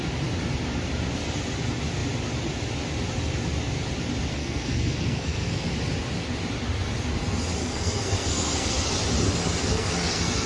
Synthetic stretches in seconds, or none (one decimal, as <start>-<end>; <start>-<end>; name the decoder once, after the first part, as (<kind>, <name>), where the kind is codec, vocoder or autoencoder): 4.3-5.7 (codec, SNAC); 7.6-8.9; 9.6-10.5